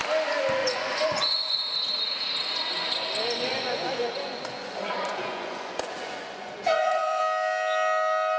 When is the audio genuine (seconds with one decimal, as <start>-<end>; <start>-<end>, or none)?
0.0-0.6; 1.7-3.5; 7.2-8.4